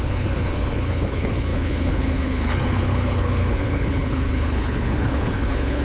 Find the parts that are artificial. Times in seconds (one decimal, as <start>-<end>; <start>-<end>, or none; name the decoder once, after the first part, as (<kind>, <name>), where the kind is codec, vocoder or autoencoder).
0.0-5.8 (codec, HILCodec)

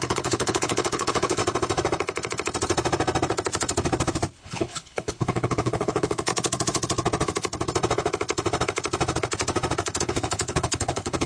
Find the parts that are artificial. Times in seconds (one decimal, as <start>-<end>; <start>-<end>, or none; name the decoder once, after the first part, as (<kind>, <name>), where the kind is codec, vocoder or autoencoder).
0.0-1.4 (codec, HILCodec); 4.4-6.3; 10.0-11.3

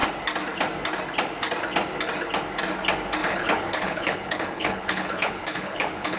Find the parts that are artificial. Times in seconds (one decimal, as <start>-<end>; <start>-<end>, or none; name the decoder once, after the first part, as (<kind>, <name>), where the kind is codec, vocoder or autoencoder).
3.2-6.2 (codec, HILCodec)

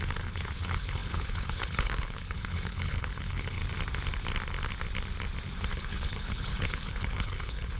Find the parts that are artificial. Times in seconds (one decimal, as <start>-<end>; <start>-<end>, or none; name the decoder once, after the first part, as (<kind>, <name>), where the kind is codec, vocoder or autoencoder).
0.0-3.6 (codec, HILCodec); 5.7-7.8

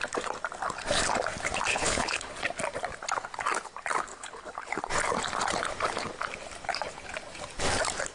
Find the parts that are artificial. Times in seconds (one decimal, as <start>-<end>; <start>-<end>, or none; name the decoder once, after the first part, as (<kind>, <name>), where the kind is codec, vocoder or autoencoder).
1.7-2.3 (codec, HILCodec); 4.1-4.8

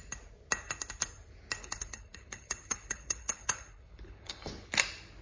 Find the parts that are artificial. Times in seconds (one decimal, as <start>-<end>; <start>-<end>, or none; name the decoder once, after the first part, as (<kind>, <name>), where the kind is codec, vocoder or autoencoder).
1.6-4.7 (codec, HILCodec)